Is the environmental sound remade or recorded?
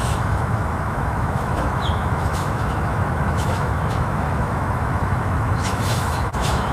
remade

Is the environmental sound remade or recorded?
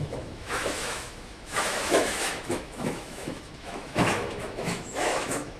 remade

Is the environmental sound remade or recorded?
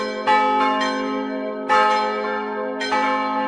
recorded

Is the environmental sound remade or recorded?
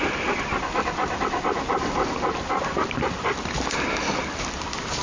recorded